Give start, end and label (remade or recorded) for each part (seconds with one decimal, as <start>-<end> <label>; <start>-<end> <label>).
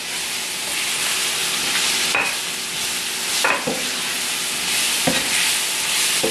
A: 0.0-6.3 recorded